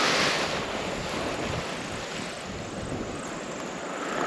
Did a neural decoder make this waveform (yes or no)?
no